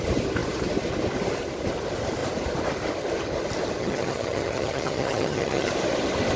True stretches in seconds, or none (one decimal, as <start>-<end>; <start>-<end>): 0.0-3.8; 5.7-6.4